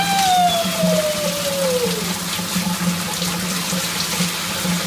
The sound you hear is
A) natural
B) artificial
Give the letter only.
A